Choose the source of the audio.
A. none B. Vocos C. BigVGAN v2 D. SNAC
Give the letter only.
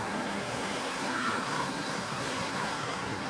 D